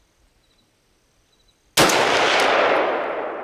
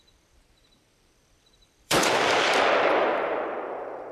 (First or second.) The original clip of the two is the first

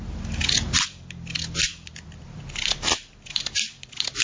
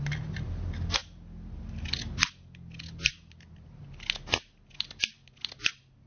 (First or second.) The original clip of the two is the second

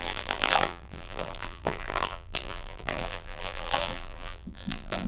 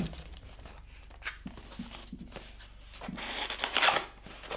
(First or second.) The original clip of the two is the second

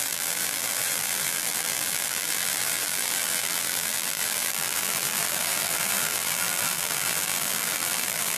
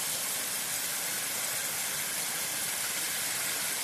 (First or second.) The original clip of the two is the second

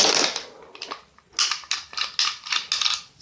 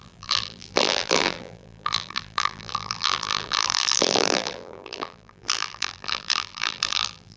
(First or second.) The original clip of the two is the first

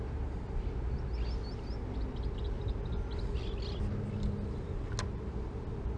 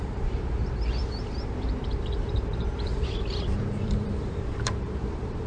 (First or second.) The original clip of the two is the first